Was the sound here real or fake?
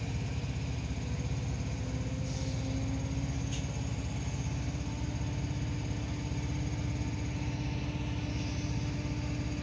real